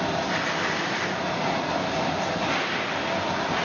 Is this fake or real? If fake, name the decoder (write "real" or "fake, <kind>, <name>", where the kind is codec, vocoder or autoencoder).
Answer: real